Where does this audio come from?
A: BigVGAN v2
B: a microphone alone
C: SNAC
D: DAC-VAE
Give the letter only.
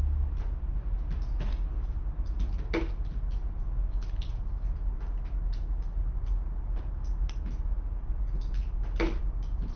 B